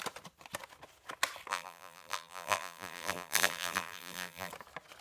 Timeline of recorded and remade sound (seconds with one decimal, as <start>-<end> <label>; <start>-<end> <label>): 0.0-1.5 recorded; 1.5-4.5 remade; 4.5-5.0 recorded